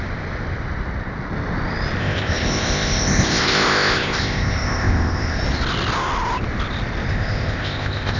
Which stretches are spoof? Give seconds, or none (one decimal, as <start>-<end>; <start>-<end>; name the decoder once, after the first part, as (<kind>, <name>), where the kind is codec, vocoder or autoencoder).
2.0-5.4 (codec, ZipCodec); 7.1-8.2

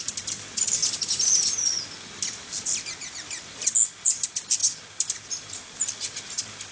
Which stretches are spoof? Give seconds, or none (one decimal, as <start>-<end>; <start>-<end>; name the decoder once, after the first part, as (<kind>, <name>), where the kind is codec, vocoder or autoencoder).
none

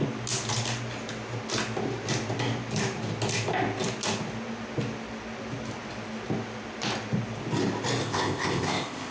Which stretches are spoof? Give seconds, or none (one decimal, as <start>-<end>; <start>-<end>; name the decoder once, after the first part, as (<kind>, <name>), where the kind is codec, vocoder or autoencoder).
8.0-9.1 (codec, ZipCodec)